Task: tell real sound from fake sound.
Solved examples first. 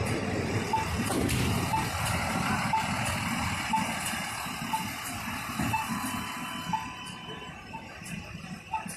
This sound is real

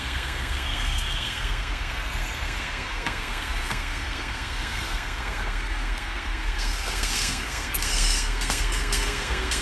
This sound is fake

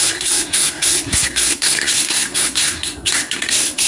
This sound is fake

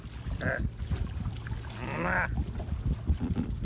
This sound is real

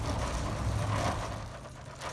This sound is real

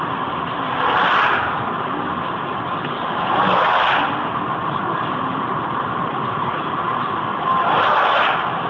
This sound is real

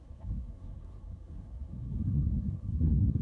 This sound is fake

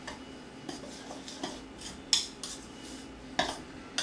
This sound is real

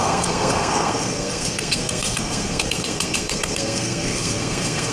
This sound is fake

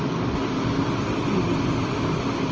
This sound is real